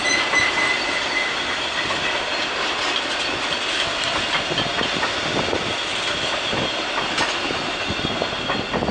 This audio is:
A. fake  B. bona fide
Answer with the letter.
B